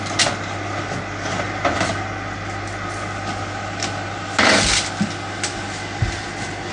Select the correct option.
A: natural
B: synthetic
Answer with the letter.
A